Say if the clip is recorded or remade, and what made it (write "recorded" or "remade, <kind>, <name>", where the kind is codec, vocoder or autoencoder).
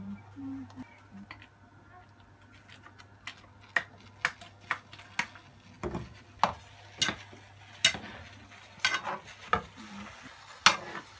recorded